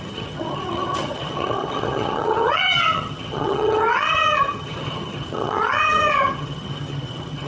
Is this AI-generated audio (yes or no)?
yes